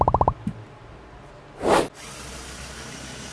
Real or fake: real